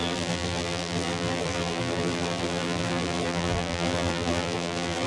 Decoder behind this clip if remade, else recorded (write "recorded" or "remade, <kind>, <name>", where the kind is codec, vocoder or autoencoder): remade, vocoder, BigVGAN v2